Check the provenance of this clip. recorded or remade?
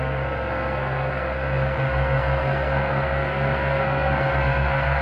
remade